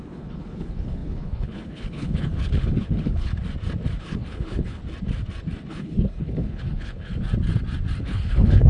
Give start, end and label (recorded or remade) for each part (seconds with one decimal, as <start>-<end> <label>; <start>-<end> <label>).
0.0-3.3 remade; 3.3-4.0 recorded; 4.0-4.8 remade; 4.8-5.7 recorded; 5.7-7.1 remade; 7.1-8.0 recorded; 8.0-8.7 remade